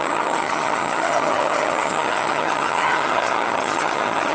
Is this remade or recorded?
remade